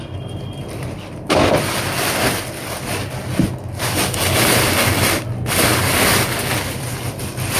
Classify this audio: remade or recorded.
recorded